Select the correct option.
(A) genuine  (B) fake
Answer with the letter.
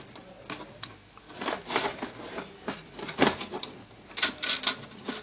A